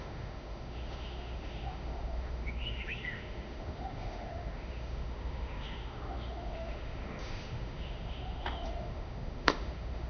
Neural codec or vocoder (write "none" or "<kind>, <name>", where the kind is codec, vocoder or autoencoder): autoencoder, DAC-VAE